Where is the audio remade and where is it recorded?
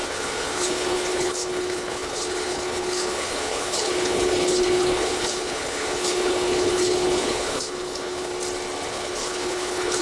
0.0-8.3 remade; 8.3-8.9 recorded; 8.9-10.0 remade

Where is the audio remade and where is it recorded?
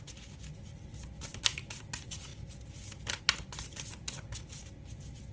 0.0-5.3 recorded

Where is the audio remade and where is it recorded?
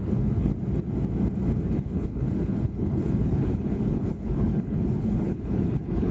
0.0-0.5 remade; 0.5-1.7 recorded; 1.7-6.1 remade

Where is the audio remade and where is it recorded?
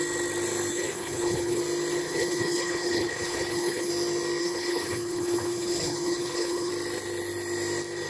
0.0-0.7 recorded; 0.7-1.6 remade; 1.6-2.0 recorded; 2.0-3.9 remade; 3.9-4.4 recorded; 4.4-6.7 remade; 6.7-8.1 recorded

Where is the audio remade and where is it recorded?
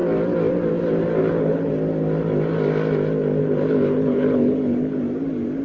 0.0-1.2 recorded; 1.2-1.7 remade; 1.7-3.4 recorded; 3.4-5.0 remade; 5.0-5.6 recorded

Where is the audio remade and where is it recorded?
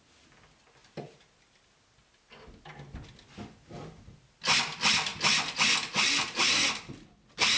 0.0-7.6 recorded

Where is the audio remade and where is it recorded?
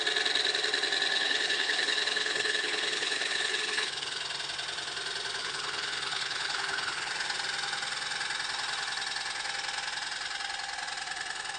0.0-1.1 recorded; 1.1-4.2 remade; 4.2-5.4 recorded; 5.4-7.1 remade; 7.1-11.6 recorded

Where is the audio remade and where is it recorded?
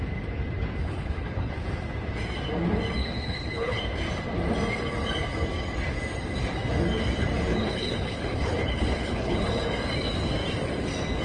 0.0-0.8 recorded; 0.8-1.5 remade; 1.5-3.0 recorded; 3.0-3.8 remade; 3.8-7.5 recorded; 7.5-9.6 remade; 9.6-11.2 recorded